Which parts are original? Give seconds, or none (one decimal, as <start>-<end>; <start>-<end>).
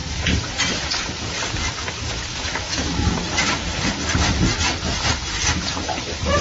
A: 0.0-2.3; 3.1-6.4